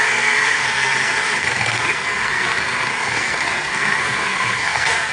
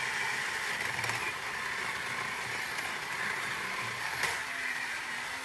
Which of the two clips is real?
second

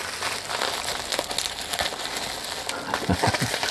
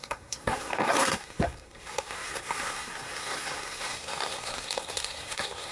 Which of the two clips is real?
first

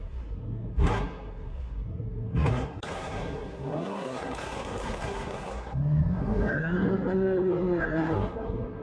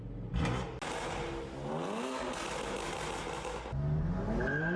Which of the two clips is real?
second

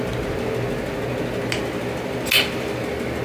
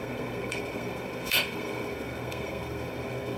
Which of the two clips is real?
first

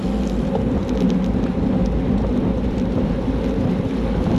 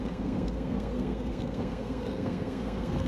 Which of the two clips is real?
first